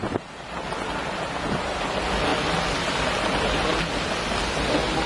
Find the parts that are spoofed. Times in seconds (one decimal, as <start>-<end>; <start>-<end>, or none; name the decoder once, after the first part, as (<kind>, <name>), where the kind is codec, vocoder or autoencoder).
none